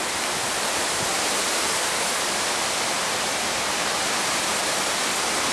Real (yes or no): no